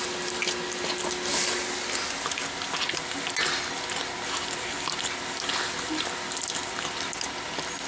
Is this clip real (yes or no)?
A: yes